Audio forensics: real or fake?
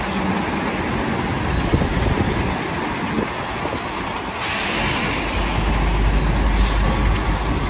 real